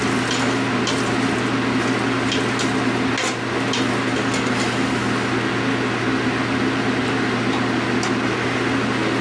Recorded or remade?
recorded